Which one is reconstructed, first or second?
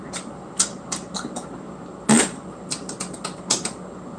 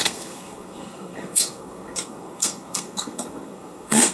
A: second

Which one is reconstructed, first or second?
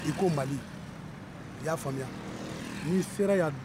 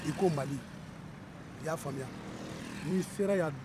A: second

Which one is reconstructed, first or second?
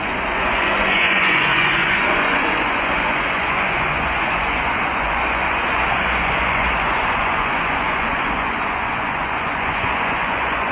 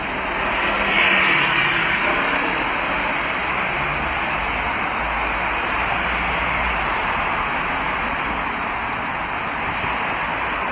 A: first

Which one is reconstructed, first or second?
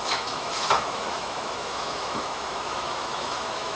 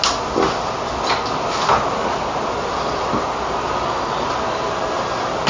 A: first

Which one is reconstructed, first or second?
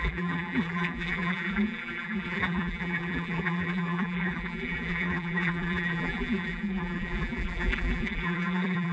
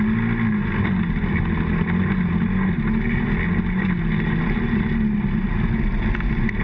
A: first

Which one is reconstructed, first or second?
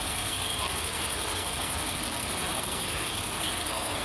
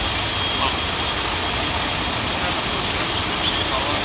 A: first